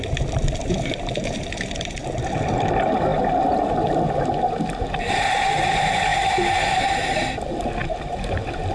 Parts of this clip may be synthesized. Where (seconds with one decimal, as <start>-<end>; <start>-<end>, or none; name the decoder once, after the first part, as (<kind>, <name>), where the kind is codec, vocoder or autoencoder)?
0.6-2.0 (vocoder, BigVGAN v2); 7.8-8.7